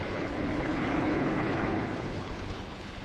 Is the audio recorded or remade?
remade